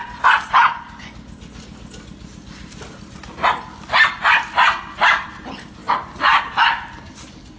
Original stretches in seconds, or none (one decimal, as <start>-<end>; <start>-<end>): 0.0-5.8; 6.4-7.6

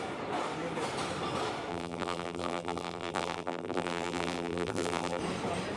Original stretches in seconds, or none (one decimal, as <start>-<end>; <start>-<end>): 0.0-1.7; 5.2-5.8

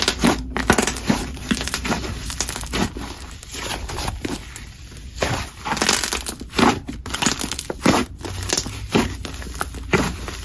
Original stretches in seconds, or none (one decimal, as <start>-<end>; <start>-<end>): 0.0-0.8; 2.3-10.4

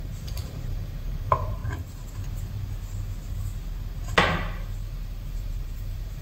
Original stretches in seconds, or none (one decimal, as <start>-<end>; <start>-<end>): 1.6-5.3